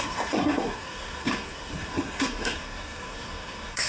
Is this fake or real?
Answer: fake